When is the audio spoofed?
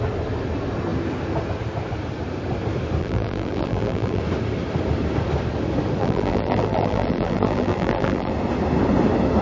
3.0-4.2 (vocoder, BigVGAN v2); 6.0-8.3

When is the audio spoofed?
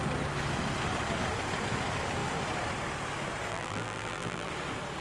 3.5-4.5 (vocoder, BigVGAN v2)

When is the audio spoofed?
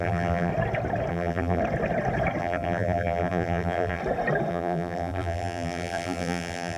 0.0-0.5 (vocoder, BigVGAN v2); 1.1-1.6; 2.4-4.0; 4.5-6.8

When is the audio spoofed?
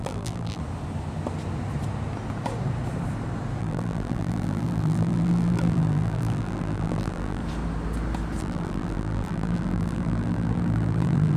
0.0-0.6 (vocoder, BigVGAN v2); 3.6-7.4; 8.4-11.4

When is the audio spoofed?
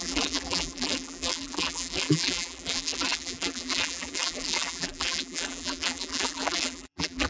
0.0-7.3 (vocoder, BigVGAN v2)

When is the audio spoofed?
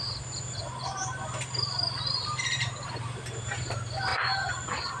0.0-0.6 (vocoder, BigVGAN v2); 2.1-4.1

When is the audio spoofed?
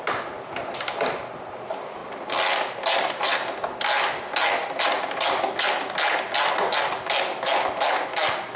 none